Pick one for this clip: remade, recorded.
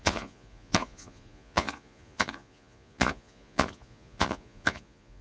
remade